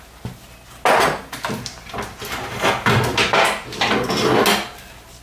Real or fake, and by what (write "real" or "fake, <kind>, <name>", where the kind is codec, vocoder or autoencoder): real